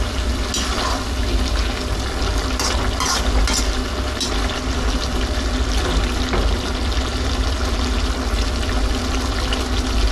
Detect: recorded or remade recorded